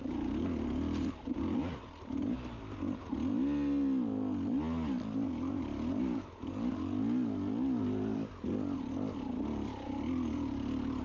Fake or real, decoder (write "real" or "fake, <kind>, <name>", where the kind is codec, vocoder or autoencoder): real